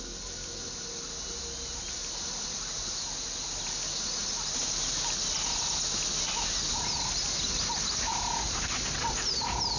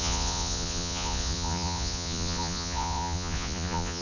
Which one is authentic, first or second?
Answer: first